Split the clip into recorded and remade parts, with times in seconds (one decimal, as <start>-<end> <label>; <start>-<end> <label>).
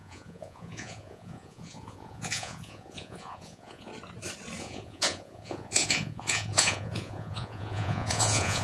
0.0-3.9 remade; 3.9-4.6 recorded; 4.6-8.6 remade